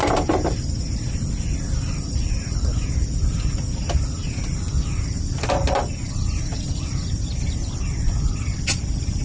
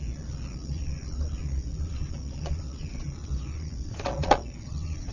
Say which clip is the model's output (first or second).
second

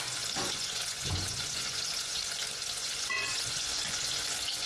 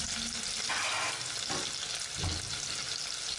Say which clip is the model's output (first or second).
first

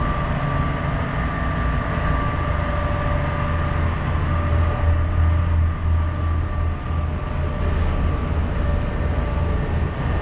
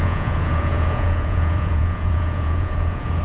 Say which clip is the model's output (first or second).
second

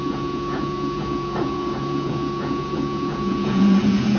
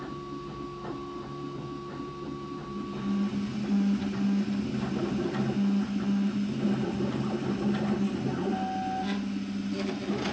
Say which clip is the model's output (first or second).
first